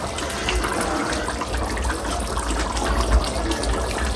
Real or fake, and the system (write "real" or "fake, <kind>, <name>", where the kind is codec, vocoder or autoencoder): real